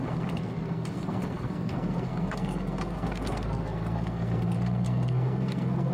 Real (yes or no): no